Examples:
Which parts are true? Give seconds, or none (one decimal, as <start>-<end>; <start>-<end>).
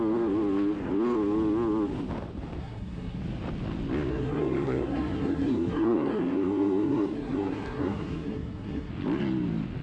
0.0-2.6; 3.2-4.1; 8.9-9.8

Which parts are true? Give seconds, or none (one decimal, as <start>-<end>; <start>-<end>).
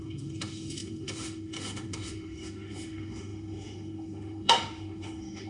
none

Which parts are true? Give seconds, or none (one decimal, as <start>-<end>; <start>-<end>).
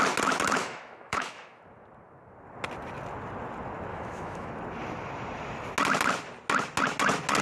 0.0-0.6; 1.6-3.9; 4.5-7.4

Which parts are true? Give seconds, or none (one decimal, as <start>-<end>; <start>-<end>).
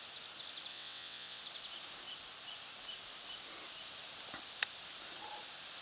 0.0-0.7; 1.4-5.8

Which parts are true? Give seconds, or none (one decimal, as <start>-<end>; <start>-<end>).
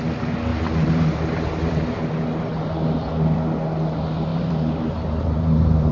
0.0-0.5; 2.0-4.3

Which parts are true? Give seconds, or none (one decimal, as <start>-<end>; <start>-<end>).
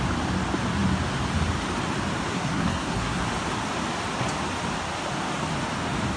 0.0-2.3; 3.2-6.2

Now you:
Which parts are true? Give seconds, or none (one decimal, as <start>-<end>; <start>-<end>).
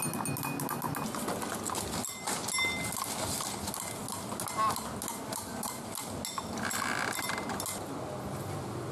0.0-8.9